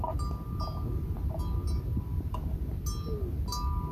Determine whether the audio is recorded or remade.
recorded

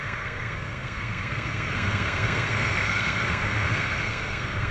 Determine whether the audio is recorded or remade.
remade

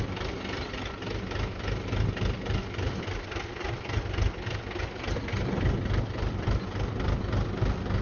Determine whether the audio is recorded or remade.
recorded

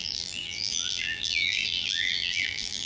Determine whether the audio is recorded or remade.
remade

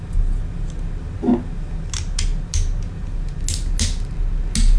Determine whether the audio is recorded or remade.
recorded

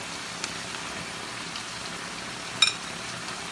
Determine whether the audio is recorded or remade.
recorded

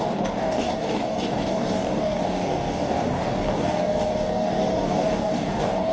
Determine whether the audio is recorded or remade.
remade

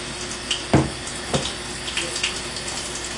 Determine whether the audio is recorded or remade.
recorded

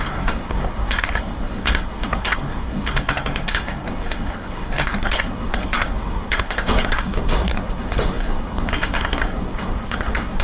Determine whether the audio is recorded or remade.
remade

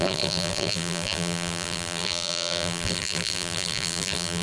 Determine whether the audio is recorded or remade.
remade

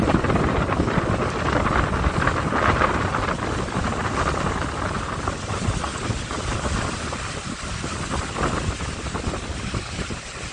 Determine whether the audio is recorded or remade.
recorded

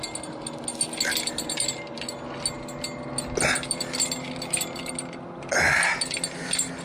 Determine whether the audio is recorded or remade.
recorded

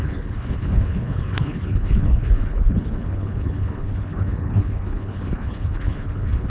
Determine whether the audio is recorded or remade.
remade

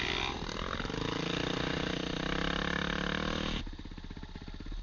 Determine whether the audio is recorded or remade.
recorded